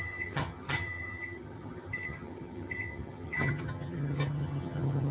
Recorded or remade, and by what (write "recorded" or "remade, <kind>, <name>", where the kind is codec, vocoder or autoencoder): remade, vocoder, HiFi-GAN